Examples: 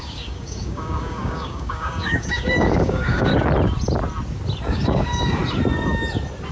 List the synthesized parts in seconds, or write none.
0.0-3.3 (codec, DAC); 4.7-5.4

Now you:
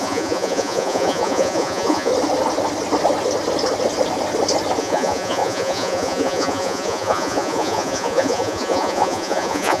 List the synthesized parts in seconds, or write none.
0.0-2.1 (vocoder, Vocos); 4.8-9.8

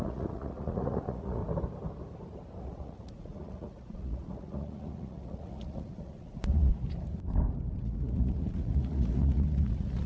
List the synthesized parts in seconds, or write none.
0.0-1.4 (vocoder, Vocos); 2.6-6.7; 7.8-10.1

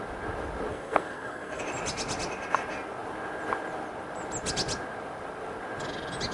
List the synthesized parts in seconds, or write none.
0.7-1.6 (codec, SNAC)

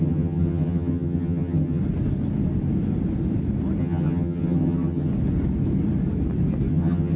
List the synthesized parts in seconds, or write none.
0.0-1.8 (vocoder, HiFi-GAN); 3.8-5.1; 6.7-7.2